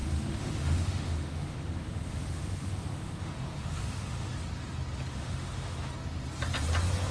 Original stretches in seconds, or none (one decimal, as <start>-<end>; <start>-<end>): 4.3-5.1; 5.9-7.1